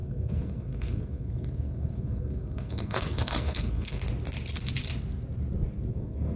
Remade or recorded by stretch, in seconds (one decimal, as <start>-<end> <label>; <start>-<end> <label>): 0.0-4.0 remade; 4.0-5.9 recorded; 5.9-6.4 remade

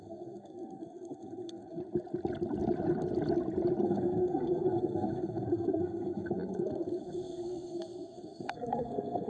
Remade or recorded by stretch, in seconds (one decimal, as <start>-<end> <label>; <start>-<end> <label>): 0.0-1.8 remade; 1.8-3.8 recorded; 3.8-9.3 remade

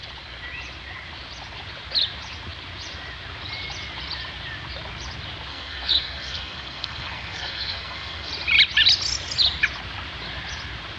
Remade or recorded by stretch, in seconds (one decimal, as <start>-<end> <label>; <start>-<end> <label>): 0.0-5.5 recorded; 5.5-8.3 remade; 8.3-11.0 recorded

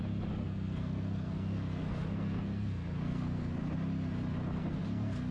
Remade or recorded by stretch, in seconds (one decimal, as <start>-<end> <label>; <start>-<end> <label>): 0.0-0.4 recorded; 0.4-3.6 remade; 3.6-4.6 recorded; 4.6-5.3 remade

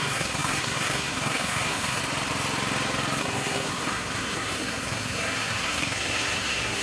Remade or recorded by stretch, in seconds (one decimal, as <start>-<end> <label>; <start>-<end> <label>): 0.0-2.0 remade; 2.0-3.2 recorded; 3.2-6.8 remade

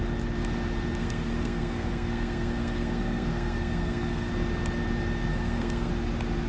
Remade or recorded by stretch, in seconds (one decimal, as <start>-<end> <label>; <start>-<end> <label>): 0.0-1.0 recorded; 1.0-4.3 remade; 4.3-5.3 recorded; 5.3-5.9 remade; 5.9-6.5 recorded